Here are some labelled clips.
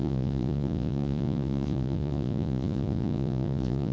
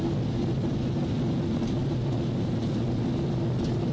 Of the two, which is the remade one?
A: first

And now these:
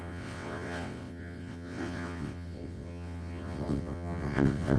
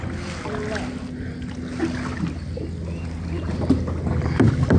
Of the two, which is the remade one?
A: first